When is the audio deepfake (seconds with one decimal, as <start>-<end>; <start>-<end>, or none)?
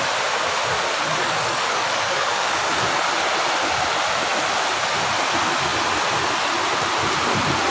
1.2-2.5